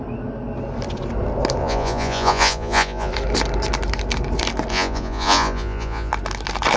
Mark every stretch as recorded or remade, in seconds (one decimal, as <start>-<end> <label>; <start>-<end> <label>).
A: 0.0-1.6 recorded; 1.6-3.1 remade; 3.1-4.7 recorded; 4.7-6.1 remade; 6.1-6.8 recorded